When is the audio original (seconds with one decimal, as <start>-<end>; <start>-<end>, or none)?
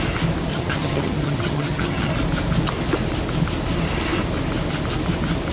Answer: 0.0-0.5; 2.1-5.5